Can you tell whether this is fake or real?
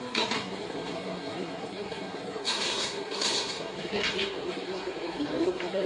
fake